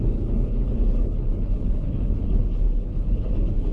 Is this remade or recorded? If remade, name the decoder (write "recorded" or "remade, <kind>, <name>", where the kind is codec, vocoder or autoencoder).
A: remade, codec, HILCodec